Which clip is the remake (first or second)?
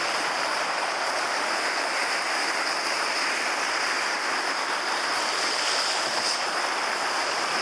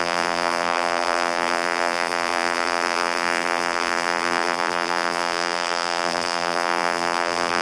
second